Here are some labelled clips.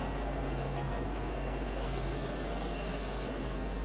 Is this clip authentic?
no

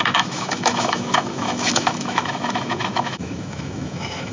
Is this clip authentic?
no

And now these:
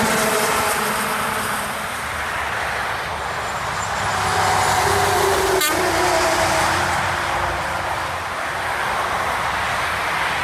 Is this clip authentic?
yes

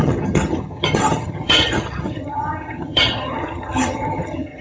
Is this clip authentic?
no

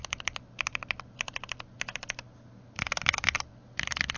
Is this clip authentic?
yes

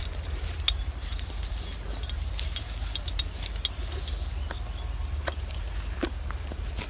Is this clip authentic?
yes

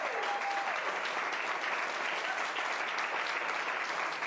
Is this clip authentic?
yes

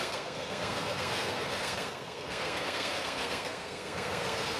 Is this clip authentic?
no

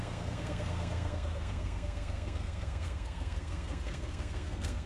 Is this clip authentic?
no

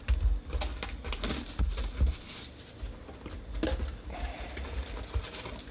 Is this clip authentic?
yes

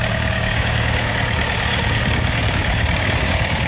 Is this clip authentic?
no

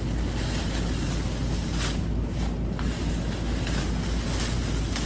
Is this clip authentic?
yes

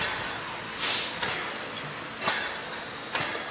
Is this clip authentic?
yes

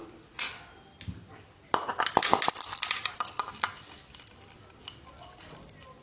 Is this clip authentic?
yes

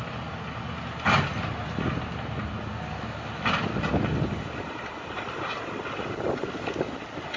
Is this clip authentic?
yes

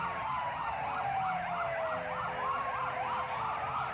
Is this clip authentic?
yes